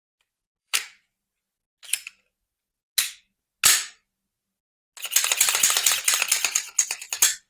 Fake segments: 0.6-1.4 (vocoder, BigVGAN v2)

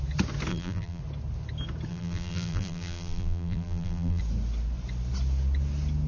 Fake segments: 0.5-1.0 (vocoder, BigVGAN v2); 1.9-4.2

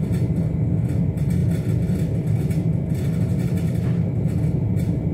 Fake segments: none